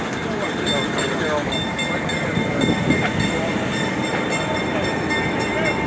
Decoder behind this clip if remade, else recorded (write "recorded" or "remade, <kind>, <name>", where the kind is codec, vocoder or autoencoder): recorded